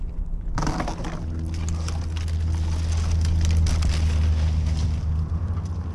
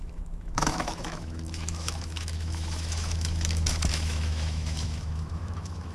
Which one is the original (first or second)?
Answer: first